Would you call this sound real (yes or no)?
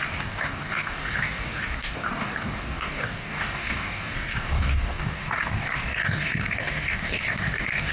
no